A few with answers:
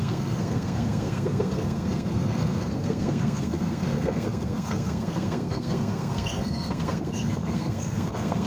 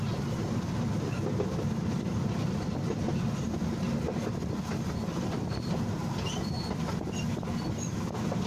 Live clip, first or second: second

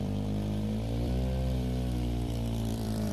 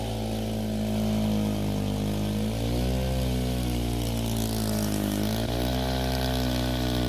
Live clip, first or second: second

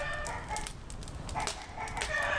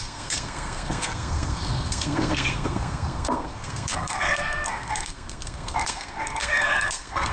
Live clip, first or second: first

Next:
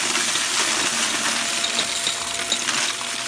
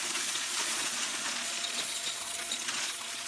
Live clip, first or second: first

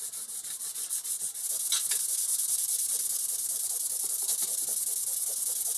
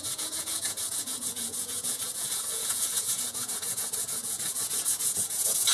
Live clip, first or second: first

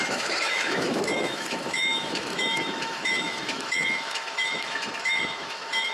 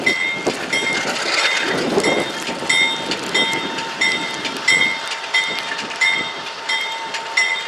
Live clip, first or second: second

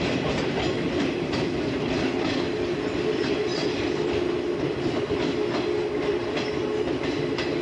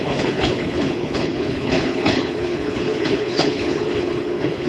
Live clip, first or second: first